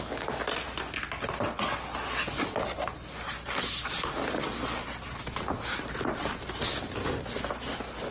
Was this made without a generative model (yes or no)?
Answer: yes